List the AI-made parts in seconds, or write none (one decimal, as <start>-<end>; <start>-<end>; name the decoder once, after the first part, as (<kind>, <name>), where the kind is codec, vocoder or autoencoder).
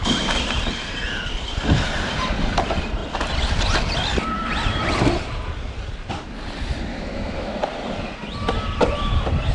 6.9-7.6 (autoencoder, DAC-VAE)